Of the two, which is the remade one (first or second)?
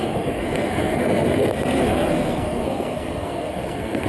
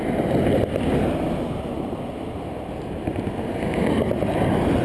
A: first